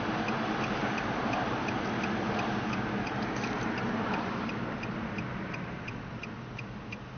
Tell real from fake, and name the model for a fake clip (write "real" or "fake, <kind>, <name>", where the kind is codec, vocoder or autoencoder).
real